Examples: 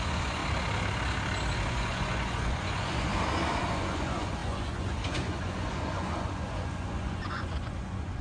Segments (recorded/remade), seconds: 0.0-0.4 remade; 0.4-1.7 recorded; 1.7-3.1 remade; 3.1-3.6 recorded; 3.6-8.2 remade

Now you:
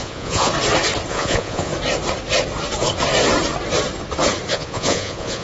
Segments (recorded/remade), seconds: 0.0-0.5 remade; 0.5-1.1 recorded; 1.1-1.7 remade; 1.7-4.5 recorded; 4.5-5.4 remade

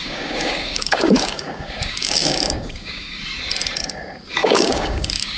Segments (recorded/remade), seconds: 0.0-3.2 remade; 3.2-4.4 recorded; 4.4-5.4 remade

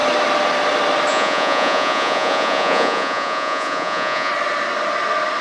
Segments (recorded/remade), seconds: 0.0-1.1 recorded; 1.1-4.3 remade; 4.3-5.4 recorded

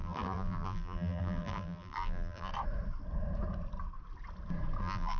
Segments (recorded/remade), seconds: 0.0-2.5 remade; 2.5-4.8 recorded; 4.8-5.2 remade

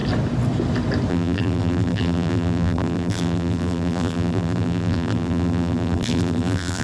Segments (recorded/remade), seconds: 0.0-1.1 recorded; 1.1-6.8 remade

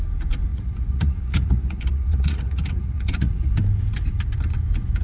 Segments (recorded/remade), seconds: 0.0-0.5 recorded; 0.5-3.5 remade; 3.5-5.0 recorded

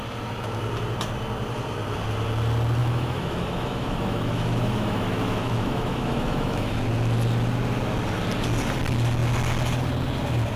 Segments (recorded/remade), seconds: 0.0-2.8 recorded; 2.8-6.7 remade; 6.7-10.6 recorded